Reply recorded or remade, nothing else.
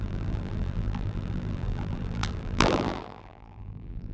remade